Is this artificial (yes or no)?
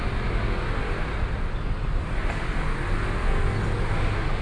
no